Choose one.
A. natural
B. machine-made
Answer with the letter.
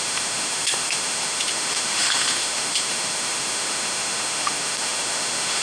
B